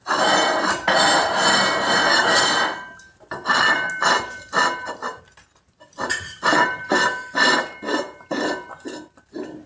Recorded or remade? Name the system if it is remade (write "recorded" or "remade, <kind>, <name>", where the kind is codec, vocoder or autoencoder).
recorded